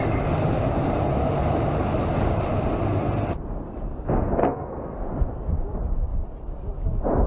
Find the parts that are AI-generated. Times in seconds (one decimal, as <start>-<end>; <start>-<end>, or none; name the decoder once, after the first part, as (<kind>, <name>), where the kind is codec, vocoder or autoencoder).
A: 4.4-5.0 (codec, SNAC)